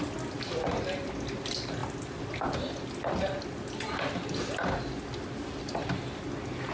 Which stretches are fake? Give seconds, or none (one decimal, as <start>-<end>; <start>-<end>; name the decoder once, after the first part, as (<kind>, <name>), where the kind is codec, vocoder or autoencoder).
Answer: none